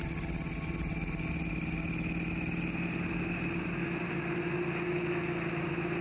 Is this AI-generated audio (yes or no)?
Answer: no